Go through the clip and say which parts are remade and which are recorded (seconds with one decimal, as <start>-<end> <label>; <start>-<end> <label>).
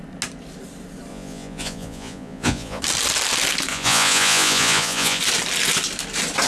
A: 0.0-1.1 recorded; 1.1-2.8 remade; 2.8-3.7 recorded; 3.7-5.2 remade; 5.2-6.5 recorded